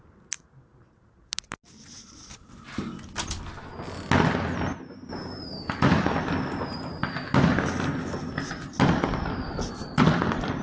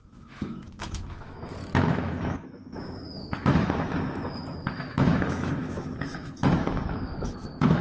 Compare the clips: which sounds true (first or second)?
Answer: first